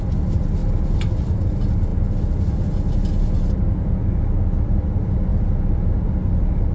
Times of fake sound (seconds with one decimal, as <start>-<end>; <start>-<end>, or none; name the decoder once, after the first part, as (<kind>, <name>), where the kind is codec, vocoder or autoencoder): none